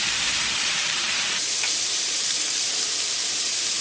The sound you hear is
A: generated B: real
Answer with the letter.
A